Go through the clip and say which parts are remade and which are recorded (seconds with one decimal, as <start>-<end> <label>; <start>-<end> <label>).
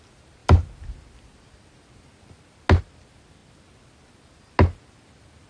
0.0-5.5 recorded